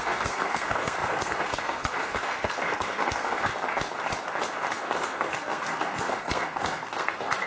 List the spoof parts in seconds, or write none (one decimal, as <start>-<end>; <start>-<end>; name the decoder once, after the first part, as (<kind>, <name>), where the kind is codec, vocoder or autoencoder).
0.0-3.5 (codec, SNAC); 4.7-7.5